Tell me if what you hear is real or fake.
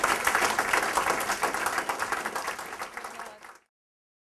real